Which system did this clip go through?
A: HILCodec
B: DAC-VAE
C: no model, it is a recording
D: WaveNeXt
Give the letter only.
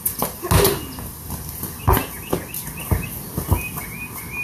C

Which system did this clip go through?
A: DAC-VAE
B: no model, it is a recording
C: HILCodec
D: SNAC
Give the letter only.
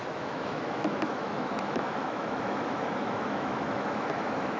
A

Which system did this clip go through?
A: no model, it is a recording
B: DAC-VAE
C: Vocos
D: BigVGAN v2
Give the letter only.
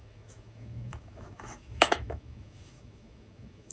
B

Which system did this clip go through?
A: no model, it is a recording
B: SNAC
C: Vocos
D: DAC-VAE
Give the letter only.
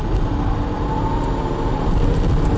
A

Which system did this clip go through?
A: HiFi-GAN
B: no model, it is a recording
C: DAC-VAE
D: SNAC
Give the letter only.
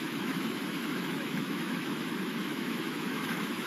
C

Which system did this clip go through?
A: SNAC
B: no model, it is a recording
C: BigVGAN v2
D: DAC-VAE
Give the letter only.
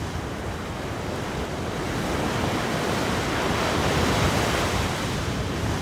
B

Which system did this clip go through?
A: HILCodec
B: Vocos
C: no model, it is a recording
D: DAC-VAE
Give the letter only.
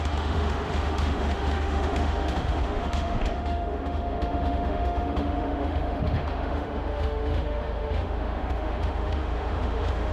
D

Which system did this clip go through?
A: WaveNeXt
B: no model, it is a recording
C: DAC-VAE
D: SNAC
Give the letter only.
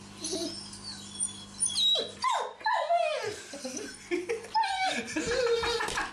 B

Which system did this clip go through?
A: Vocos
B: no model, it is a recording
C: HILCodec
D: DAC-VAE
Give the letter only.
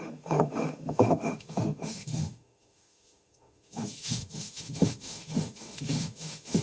D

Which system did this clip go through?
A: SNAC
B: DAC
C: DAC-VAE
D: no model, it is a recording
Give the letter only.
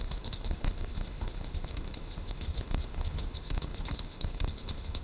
C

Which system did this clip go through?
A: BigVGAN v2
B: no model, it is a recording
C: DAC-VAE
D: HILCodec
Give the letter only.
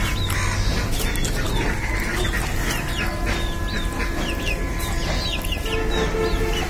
B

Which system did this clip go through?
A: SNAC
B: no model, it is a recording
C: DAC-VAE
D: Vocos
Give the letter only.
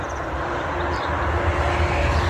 B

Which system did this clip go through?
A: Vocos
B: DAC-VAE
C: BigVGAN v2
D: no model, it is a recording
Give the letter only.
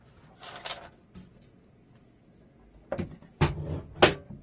D